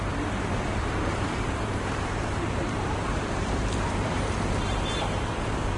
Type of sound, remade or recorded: remade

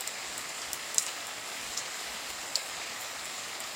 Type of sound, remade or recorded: remade